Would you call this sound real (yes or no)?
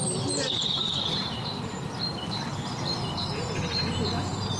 yes